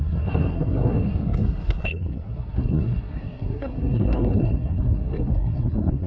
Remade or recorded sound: remade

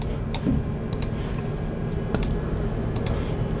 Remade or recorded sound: recorded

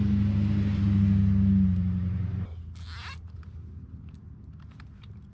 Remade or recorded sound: recorded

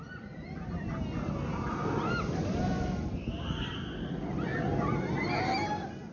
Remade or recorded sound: recorded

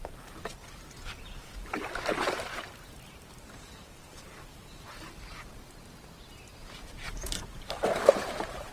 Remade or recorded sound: remade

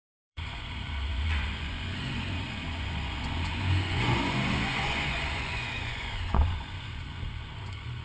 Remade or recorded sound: remade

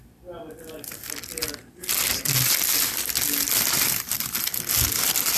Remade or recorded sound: recorded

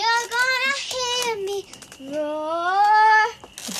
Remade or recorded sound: recorded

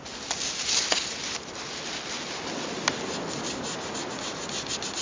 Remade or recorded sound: recorded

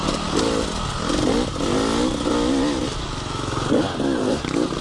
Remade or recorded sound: recorded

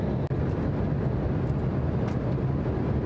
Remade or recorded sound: recorded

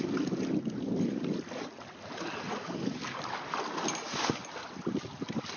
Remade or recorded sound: recorded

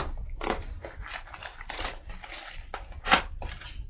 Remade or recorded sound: recorded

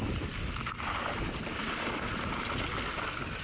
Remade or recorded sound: recorded